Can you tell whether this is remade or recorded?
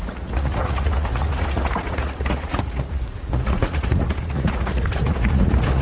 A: remade